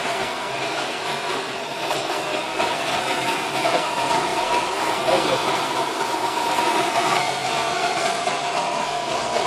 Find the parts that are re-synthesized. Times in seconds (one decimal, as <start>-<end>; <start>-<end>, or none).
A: 0.0-9.5